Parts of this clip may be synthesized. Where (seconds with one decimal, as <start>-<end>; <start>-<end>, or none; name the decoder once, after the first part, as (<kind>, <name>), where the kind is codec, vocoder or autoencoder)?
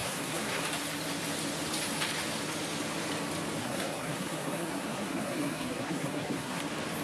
0.0-0.6 (codec, SNAC); 3.6-6.6